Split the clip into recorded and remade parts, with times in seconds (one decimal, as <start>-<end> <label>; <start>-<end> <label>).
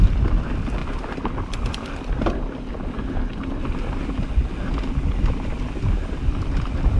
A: 0.0-7.0 recorded